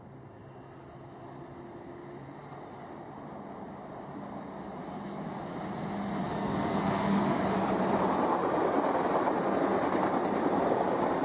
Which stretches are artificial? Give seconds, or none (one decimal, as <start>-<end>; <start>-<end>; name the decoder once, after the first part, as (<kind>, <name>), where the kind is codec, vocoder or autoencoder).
6.2-7.2 (codec, SNAC)